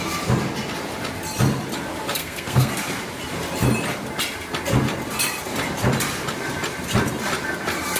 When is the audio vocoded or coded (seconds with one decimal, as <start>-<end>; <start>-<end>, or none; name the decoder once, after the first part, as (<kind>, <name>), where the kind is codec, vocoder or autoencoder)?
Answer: 2.2-2.7 (codec, SNAC)